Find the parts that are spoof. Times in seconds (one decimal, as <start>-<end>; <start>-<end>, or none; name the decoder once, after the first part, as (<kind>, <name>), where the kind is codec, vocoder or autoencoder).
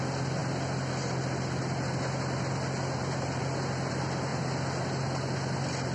none